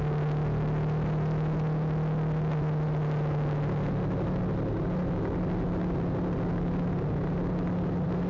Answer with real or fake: real